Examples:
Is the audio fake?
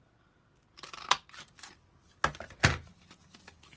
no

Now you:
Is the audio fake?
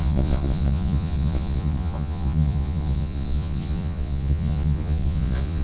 yes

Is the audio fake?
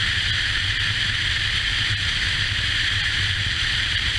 no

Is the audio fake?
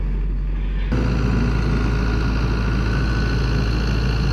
no